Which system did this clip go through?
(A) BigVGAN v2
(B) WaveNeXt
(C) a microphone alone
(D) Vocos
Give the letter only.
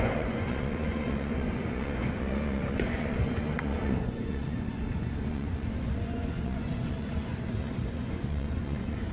D